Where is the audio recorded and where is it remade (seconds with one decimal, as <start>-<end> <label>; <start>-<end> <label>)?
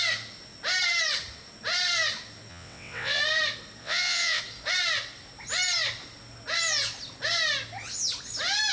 0.0-2.5 recorded; 2.5-3.2 remade; 3.2-3.8 recorded; 3.8-4.4 remade; 4.4-8.7 recorded